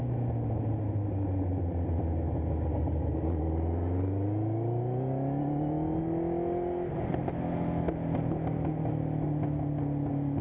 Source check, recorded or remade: recorded